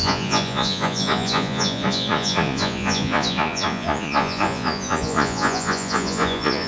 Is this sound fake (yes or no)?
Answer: yes